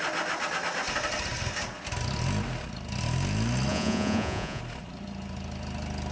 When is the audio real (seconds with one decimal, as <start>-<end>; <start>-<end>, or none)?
0.0-3.7; 4.6-6.1